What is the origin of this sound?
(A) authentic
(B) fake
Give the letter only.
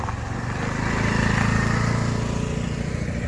A